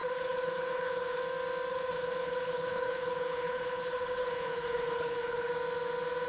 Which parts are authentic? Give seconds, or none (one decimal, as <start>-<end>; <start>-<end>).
1.2-1.7; 5.5-6.3